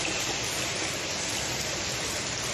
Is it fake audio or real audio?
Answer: real